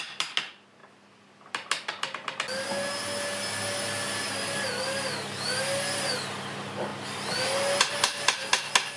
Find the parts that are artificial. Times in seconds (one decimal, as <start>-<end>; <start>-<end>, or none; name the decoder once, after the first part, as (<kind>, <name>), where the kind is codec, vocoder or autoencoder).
none